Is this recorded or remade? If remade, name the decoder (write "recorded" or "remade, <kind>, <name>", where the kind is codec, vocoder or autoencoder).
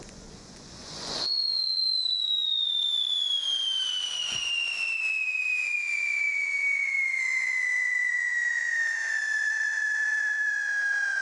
remade, vocoder, Vocos